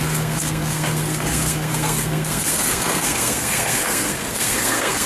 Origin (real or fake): fake